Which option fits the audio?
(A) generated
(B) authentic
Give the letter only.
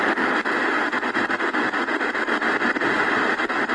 B